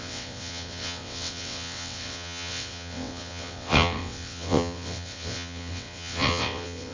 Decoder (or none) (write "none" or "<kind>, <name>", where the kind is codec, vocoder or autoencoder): vocoder, WaveNeXt